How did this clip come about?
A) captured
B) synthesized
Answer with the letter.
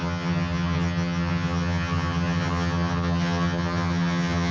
B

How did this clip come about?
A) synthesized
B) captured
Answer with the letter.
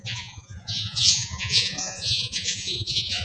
A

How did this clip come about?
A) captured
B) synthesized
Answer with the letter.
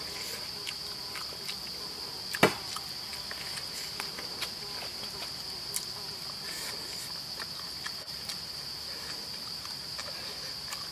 A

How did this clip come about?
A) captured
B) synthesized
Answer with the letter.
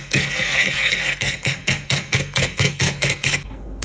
B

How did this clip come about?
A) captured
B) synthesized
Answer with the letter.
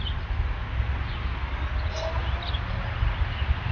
A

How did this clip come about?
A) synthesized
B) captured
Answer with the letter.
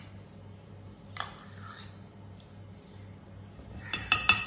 B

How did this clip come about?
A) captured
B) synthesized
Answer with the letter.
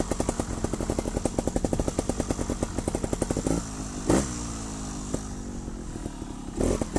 A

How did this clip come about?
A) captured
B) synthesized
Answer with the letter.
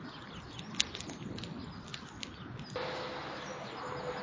A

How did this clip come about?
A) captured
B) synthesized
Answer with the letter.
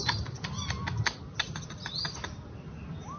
A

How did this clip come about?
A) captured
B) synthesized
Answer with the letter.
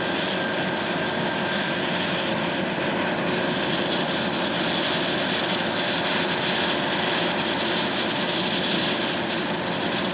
A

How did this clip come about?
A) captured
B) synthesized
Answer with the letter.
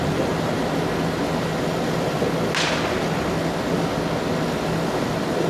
A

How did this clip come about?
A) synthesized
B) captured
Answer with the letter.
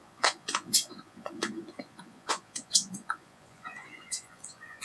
A